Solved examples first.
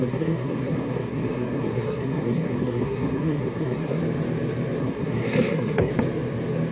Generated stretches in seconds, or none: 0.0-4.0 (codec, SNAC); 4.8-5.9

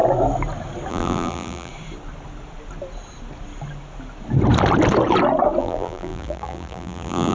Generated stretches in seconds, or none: 0.9-1.7 (vocoder, BigVGAN v2); 5.6-7.3

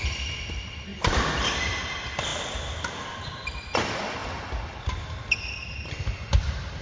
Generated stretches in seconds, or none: none

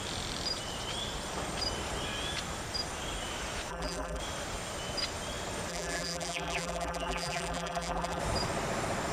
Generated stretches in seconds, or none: 3.7-4.2 (vocoder, BigVGAN v2); 5.7-8.2

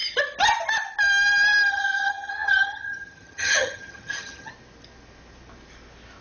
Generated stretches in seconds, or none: 1.7-4.5 (vocoder, HiFi-GAN)

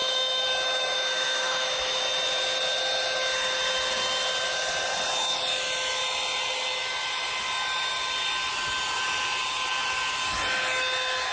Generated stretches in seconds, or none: 0.0-2.0 (autoencoder, DAC-VAE)

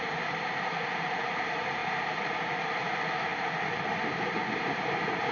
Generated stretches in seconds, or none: 0.0-3.3 (vocoder, BigVGAN v2); 4.1-5.3